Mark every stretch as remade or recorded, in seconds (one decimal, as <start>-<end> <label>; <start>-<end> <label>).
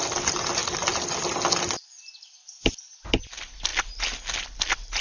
0.0-5.0 recorded